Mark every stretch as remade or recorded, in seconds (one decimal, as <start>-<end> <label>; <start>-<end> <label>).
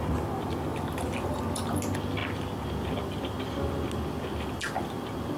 0.0-0.7 recorded; 0.7-1.4 remade; 1.4-5.4 recorded